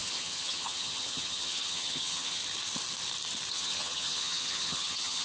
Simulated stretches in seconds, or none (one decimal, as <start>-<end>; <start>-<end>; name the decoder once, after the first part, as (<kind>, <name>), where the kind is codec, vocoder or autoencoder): 0.0-2.4 (vocoder, HiFi-GAN); 3.5-5.2